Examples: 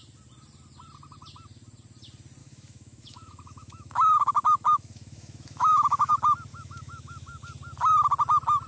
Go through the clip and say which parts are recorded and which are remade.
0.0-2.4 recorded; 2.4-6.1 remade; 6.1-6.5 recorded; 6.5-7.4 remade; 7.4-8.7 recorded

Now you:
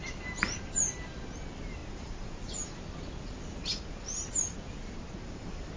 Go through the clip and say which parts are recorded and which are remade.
0.0-5.8 recorded

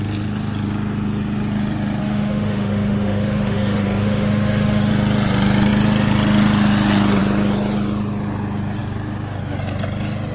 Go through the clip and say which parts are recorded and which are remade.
0.0-2.0 recorded; 2.0-4.9 remade; 4.9-10.3 recorded

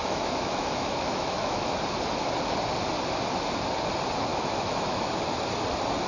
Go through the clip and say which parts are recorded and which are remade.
0.0-1.7 remade; 1.7-4.3 recorded; 4.3-5.1 remade; 5.1-6.1 recorded

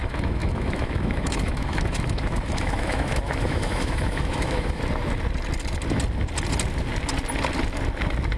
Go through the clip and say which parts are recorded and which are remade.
0.0-4.8 remade; 4.8-8.4 recorded

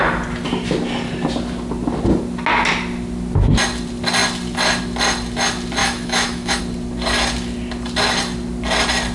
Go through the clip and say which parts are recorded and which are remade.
0.0-5.8 recorded; 5.8-6.6 remade; 6.6-9.1 recorded

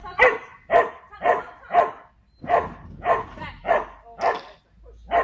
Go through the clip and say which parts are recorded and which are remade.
0.0-5.2 recorded